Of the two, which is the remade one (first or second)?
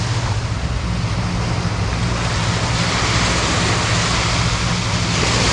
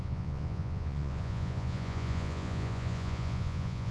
second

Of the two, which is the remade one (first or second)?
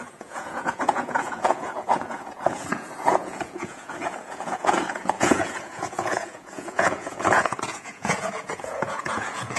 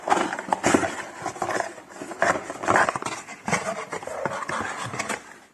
first